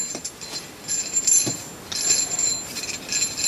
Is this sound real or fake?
real